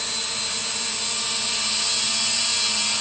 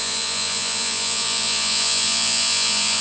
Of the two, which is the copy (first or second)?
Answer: second